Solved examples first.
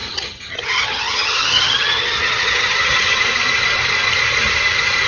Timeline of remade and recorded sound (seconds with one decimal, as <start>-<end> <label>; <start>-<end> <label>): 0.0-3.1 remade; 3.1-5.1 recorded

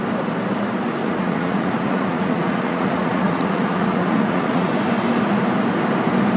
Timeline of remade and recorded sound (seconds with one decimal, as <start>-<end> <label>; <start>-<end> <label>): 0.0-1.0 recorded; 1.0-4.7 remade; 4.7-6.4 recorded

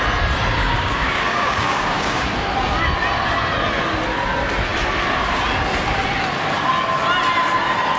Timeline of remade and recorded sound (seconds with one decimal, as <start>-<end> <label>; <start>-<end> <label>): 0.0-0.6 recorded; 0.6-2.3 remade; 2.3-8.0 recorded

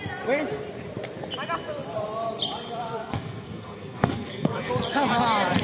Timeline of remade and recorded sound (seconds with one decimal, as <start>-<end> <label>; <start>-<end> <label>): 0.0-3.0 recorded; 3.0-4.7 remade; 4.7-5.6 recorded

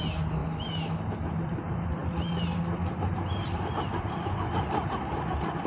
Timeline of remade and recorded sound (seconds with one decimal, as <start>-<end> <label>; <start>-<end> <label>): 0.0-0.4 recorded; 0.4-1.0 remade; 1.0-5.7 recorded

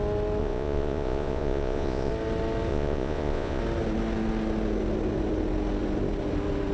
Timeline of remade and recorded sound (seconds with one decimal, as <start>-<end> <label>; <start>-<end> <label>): 0.0-0.4 recorded; 0.4-2.1 remade; 2.1-2.7 recorded; 2.7-3.6 remade; 3.6-6.7 recorded